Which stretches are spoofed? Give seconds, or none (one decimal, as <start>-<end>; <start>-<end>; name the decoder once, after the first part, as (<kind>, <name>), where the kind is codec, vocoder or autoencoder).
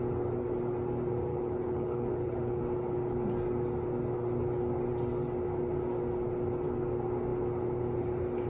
1.3-2.6 (codec, HILCodec)